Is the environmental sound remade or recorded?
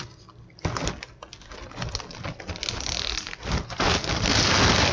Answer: recorded